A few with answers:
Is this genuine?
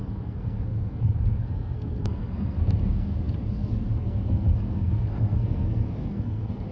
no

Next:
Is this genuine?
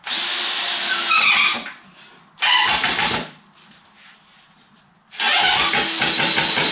yes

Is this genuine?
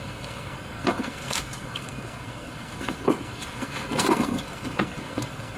no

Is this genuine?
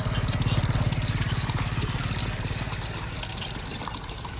yes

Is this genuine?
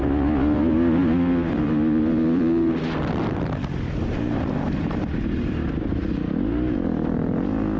yes